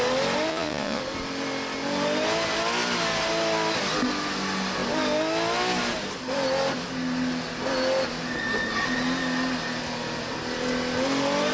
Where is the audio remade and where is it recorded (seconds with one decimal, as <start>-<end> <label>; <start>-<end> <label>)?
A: 0.0-0.5 recorded; 0.5-1.0 remade; 1.0-11.5 recorded